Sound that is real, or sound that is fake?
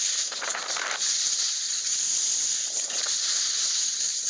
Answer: fake